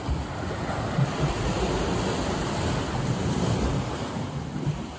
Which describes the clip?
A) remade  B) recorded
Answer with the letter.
B